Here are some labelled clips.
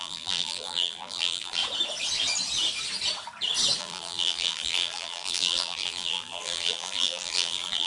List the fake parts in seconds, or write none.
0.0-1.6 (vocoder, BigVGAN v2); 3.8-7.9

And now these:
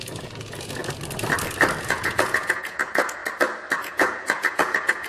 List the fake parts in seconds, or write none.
0.0-0.8 (vocoder, Vocos); 1.8-3.2; 3.8-5.1

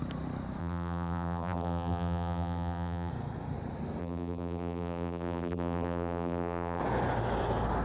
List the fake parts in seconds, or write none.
0.6-3.1 (vocoder, BigVGAN v2); 4.0-6.8

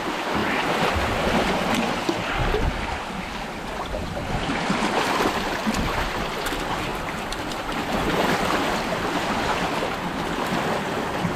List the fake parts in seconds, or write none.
0.0-2.4 (vocoder, BigVGAN v2); 4.0-6.9; 7.5-11.4

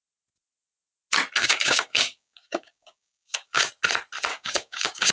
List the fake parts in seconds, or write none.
1.4-3.7 (codec, DAC); 4.3-5.1

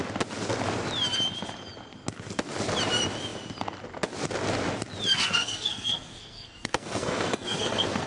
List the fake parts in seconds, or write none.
5.1-8.1 (codec, SNAC)

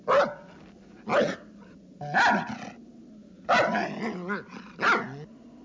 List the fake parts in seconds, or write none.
none

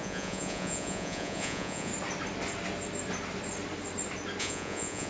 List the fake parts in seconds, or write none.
0.0-1.9 (vocoder, Vocos); 4.4-5.1